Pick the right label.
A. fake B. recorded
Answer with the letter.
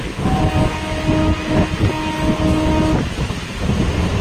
B